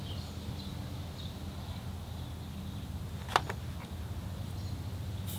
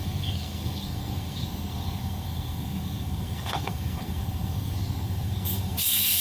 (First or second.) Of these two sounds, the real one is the first